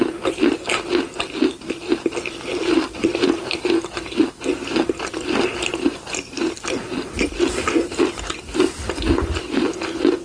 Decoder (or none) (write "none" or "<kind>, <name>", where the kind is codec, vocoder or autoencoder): none